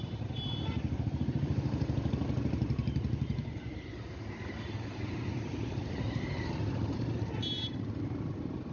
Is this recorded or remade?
remade